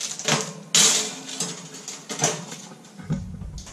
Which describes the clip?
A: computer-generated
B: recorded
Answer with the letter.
B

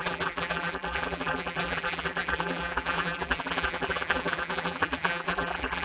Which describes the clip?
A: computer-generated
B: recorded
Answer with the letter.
A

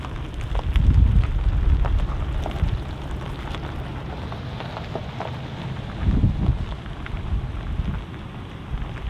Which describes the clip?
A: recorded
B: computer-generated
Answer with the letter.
A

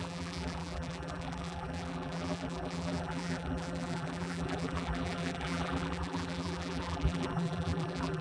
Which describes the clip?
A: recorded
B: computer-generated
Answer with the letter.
B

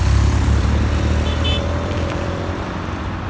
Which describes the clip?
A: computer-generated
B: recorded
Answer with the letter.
A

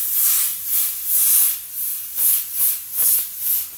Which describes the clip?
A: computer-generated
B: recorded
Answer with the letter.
B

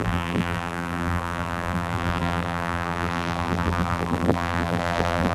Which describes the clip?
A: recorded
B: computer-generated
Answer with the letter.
B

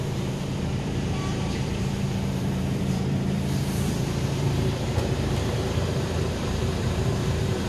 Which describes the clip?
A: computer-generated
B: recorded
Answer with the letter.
A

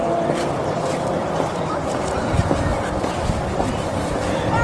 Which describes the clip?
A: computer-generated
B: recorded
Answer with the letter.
A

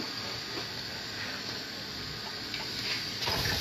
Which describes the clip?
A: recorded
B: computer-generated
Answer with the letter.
A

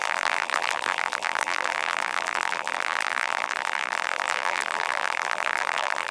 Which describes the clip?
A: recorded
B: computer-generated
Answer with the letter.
B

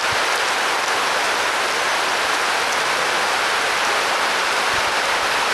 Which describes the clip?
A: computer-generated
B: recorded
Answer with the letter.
B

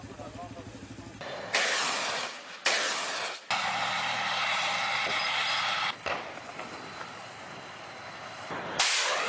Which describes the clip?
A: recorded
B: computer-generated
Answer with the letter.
A